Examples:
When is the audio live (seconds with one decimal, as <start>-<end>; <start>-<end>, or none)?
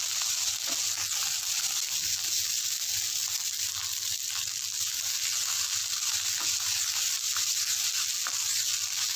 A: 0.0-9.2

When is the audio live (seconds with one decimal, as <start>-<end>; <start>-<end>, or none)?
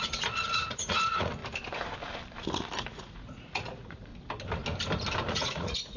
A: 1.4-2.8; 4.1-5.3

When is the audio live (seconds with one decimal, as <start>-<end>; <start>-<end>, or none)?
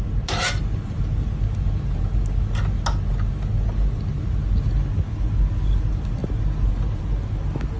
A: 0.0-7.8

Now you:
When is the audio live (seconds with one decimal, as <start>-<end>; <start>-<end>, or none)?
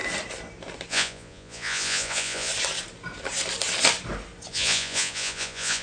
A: 0.0-0.9; 2.5-4.5